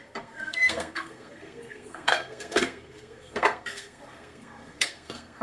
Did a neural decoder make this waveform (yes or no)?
yes